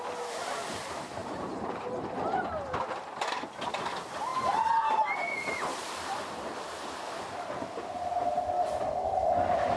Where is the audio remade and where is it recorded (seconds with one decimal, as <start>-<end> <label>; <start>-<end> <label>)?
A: 0.0-1.2 recorded; 1.2-1.8 remade; 1.8-5.7 recorded; 5.7-7.5 remade; 7.5-9.8 recorded